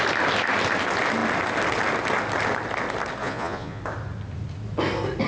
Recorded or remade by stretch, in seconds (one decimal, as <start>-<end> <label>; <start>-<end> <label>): 0.0-3.2 recorded; 3.2-3.8 remade; 3.8-5.3 recorded